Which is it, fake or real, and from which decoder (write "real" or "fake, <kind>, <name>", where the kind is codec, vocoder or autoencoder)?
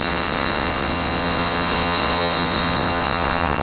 fake, vocoder, WaveNeXt